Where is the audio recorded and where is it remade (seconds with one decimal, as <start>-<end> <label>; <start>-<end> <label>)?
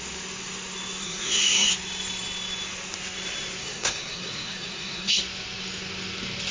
0.0-1.0 recorded; 1.0-1.7 remade; 1.7-3.6 recorded; 3.6-5.2 remade; 5.2-6.5 recorded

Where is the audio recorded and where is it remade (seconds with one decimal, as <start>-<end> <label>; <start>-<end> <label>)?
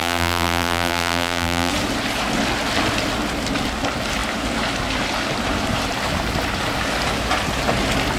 0.0-1.7 remade; 1.7-8.2 recorded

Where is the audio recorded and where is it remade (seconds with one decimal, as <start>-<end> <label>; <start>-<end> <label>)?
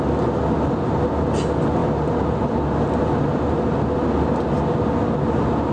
0.0-5.7 recorded